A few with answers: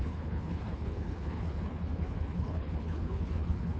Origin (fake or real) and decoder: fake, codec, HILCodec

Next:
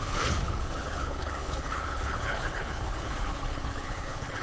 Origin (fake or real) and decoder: fake, codec, HILCodec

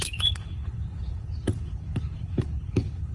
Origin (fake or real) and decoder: fake, codec, HILCodec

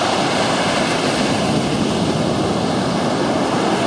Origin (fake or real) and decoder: real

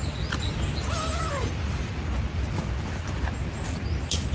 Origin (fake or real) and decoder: real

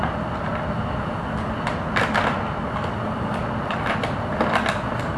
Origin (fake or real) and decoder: real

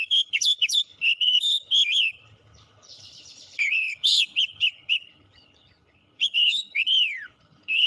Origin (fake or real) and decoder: fake, codec, HILCodec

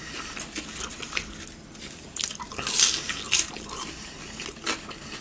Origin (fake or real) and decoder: real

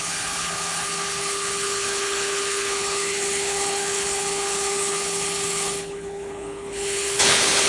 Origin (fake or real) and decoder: fake, codec, HILCodec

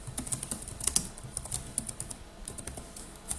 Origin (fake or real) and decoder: real